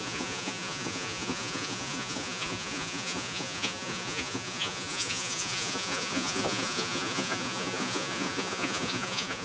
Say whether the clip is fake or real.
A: fake